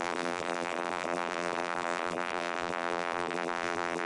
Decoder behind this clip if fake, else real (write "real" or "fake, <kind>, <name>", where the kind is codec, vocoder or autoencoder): fake, vocoder, BigVGAN v2